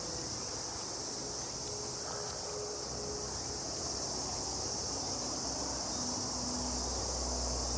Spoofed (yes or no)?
no